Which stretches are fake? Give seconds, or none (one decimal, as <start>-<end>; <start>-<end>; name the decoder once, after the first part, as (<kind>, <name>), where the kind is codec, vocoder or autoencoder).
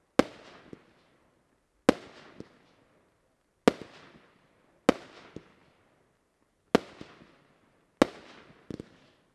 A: none